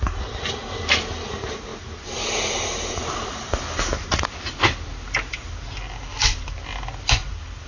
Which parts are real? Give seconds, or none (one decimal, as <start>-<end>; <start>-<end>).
0.0-7.7